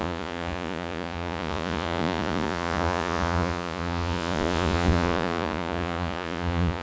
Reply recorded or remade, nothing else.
remade